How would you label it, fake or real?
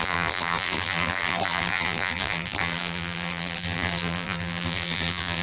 fake